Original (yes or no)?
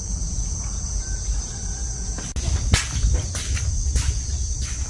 yes